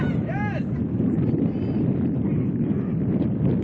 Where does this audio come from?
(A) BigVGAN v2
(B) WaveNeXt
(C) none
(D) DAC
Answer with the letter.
A